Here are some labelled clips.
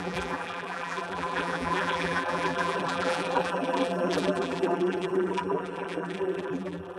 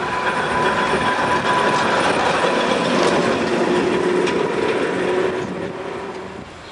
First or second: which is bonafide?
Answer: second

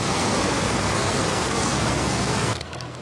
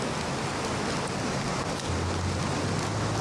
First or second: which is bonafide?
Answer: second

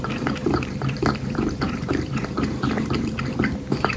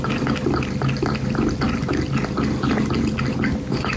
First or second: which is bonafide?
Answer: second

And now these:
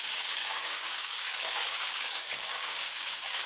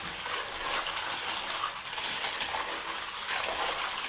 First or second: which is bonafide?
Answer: second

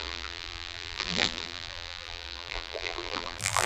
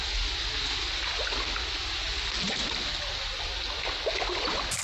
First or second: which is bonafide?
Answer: second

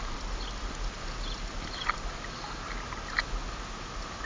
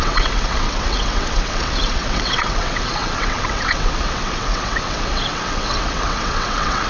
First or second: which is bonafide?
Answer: first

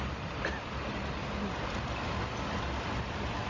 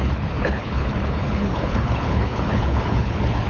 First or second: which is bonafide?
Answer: first